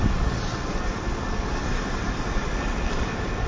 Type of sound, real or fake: real